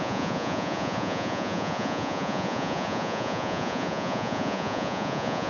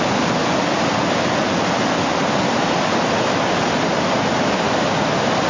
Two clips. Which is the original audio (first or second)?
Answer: second